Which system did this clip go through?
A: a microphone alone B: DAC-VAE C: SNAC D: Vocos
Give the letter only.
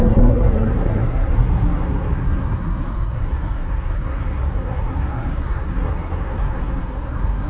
C